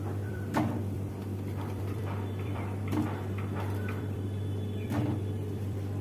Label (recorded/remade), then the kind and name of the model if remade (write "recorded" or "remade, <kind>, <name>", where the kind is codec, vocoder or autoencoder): remade, vocoder, BigVGAN v2